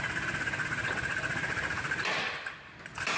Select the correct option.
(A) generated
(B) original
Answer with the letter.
B